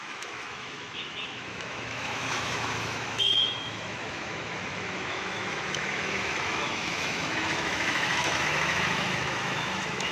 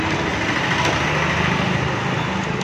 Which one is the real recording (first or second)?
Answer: second